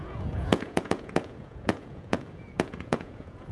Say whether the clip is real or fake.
fake